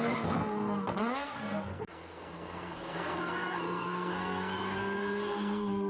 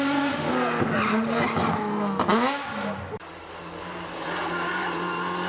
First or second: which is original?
second